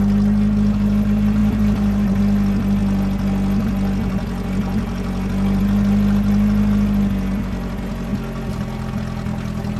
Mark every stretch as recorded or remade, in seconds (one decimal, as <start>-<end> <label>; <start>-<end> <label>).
0.0-1.4 recorded; 1.4-2.2 remade; 2.2-9.8 recorded